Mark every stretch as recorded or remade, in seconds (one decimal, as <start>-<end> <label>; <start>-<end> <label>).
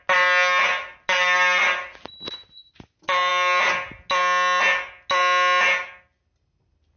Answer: 0.0-7.0 recorded